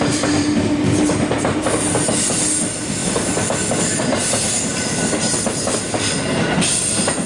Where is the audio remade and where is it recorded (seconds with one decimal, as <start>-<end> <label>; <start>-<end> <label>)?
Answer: 0.0-7.3 recorded